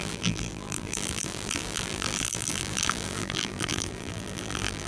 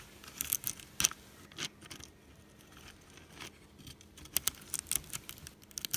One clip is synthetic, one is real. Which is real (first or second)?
second